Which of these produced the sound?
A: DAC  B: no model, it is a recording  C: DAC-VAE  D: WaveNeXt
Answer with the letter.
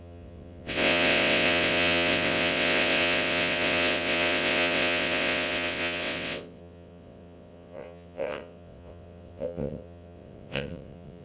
D